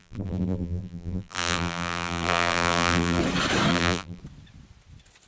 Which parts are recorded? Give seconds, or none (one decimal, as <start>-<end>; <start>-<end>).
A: 3.2-3.7; 4.2-5.3

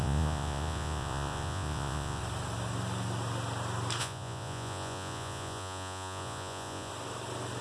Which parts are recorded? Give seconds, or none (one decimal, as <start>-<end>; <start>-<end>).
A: 2.2-4.0; 6.9-7.6

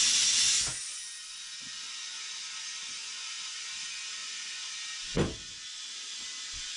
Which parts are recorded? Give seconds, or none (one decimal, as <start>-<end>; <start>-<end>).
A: 0.0-3.0; 3.6-4.2; 4.7-6.8

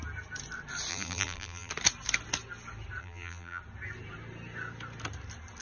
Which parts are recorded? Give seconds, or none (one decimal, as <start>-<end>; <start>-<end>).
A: 0.0-0.9; 1.7-3.0; 3.6-5.6

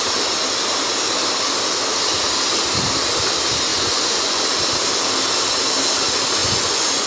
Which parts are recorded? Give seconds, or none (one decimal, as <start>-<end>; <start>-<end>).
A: 0.0-3.7; 4.4-6.4

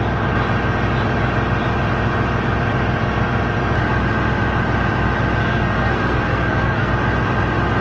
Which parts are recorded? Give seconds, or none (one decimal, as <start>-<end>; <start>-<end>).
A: 0.0-5.4; 6.9-7.8

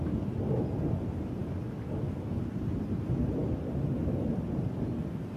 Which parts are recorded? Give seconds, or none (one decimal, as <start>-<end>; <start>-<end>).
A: 0.0-5.4